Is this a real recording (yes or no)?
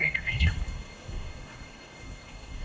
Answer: no